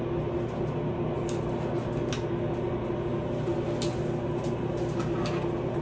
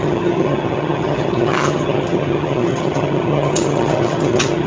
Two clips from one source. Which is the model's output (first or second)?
second